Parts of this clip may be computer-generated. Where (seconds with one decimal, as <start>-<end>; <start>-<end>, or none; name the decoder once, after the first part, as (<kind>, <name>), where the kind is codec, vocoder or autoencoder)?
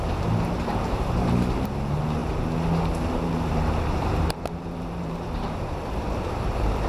0.0-2.2 (vocoder, BigVGAN v2); 3.1-6.9